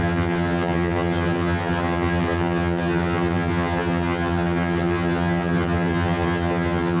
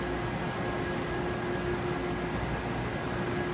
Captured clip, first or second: second